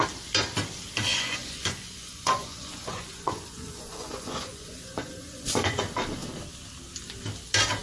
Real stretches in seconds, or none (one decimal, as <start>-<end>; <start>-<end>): 0.0-1.1; 5.8-7.8